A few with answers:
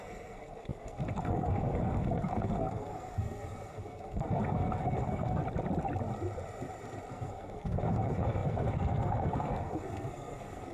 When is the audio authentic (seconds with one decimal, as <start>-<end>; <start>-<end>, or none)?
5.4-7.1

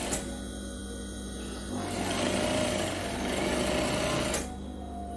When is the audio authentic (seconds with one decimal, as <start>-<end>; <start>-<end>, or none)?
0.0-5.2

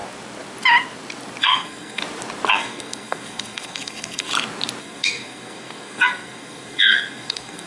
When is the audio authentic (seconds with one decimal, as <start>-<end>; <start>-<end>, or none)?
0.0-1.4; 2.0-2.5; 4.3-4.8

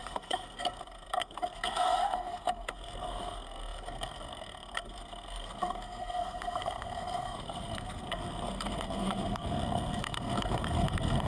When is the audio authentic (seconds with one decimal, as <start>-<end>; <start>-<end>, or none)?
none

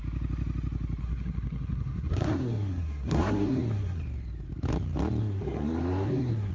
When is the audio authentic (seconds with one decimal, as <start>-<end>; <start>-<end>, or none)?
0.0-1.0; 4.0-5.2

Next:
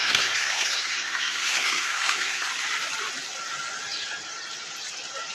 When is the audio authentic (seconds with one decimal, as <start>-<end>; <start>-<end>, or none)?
2.5-5.3